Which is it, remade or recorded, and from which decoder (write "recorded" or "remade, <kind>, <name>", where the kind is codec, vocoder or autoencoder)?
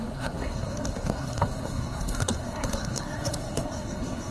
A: remade, codec, SNAC